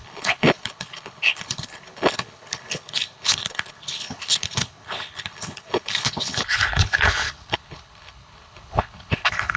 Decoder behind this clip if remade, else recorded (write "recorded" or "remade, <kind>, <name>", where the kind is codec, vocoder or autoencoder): remade, codec, HILCodec